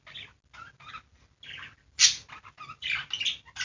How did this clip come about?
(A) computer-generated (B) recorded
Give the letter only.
B